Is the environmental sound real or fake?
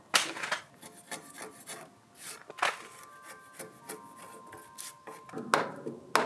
real